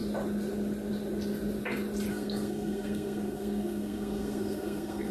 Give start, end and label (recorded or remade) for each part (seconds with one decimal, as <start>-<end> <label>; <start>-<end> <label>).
0.0-2.1 recorded; 2.1-5.1 remade